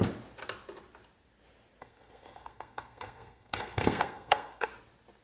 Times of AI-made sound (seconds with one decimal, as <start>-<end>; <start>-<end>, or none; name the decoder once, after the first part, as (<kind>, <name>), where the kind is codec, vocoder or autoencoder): 1.8-4.7 (codec, SNAC)